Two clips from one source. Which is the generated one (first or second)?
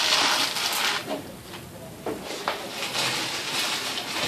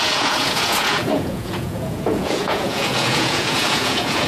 second